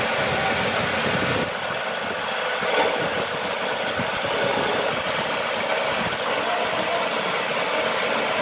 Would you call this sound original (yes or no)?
yes